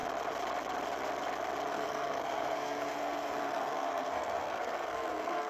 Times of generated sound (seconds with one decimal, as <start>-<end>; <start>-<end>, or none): 1.7-5.5